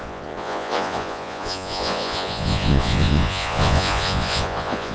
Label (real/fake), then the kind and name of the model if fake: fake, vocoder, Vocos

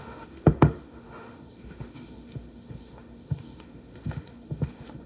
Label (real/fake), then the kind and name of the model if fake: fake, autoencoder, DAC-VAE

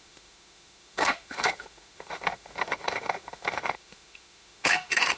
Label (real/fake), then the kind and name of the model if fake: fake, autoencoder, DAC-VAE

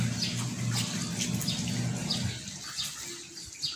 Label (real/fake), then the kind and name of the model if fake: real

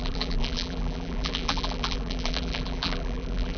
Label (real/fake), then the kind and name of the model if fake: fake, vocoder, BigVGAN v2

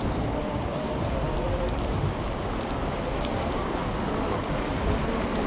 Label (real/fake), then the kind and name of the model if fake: real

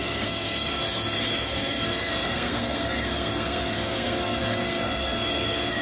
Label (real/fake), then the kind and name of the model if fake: fake, codec, SNAC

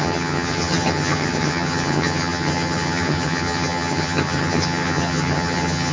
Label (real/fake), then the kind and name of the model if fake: fake, vocoder, HiFi-GAN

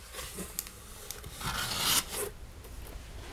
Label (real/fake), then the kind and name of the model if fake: real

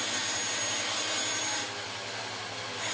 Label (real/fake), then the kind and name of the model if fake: real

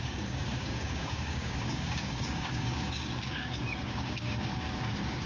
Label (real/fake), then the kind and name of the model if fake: fake, codec, DAC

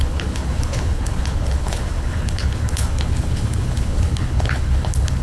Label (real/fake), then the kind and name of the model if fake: fake, codec, HILCodec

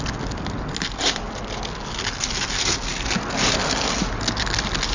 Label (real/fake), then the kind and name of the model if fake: real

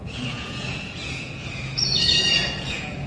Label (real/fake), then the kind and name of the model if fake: fake, vocoder, Vocos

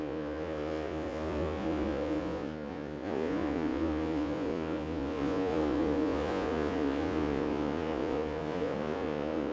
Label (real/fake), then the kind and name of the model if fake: fake, vocoder, Vocos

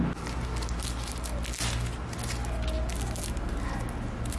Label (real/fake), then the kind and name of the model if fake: real